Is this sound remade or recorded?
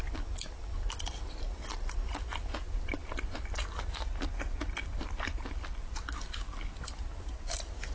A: recorded